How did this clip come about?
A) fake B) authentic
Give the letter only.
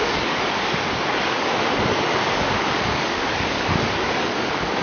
A